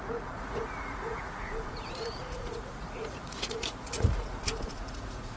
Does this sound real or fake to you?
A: fake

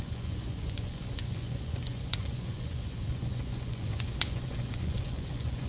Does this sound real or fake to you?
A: fake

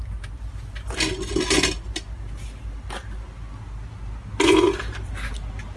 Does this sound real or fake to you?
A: real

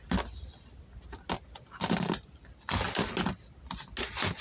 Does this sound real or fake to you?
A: real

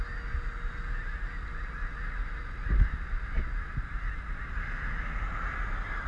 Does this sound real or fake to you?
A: real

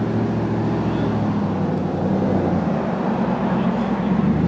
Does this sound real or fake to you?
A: real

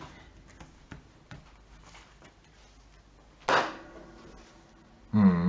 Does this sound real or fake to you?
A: real